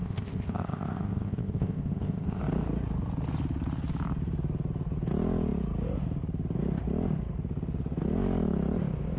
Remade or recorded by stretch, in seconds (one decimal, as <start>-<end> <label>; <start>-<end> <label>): 0.0-2.4 remade; 2.4-9.2 recorded